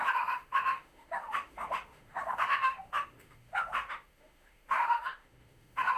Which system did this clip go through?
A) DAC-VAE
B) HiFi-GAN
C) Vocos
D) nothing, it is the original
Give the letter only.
A